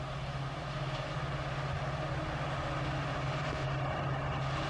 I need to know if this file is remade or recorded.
recorded